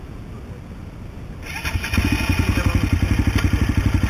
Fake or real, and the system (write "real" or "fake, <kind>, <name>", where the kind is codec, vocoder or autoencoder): real